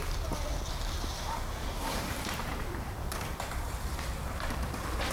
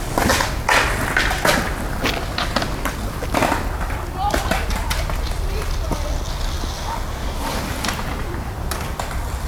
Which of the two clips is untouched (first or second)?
second